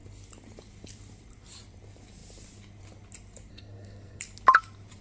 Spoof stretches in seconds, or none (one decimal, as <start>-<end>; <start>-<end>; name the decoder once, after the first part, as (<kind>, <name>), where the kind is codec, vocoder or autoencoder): 3.5-4.2 (codec, SNAC)